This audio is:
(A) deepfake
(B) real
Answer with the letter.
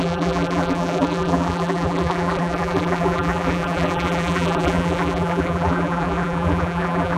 A